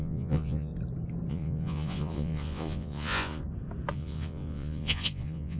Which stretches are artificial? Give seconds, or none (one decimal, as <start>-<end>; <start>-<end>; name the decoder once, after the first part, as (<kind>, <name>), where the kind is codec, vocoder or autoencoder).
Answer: 0.0-0.7 (vocoder, Vocos); 1.3-3.4; 3.9-5.6